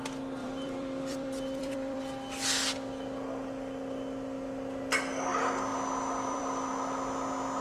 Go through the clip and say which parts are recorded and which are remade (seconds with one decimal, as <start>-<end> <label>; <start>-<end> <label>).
0.0-0.4 recorded; 0.4-2.0 remade; 2.0-5.7 recorded; 5.7-6.7 remade; 6.7-7.6 recorded